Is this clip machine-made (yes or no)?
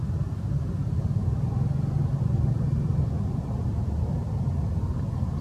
no